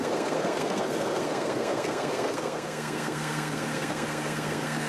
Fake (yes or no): yes